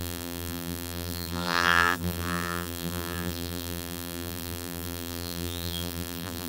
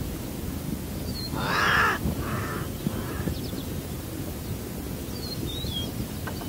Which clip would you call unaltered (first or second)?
second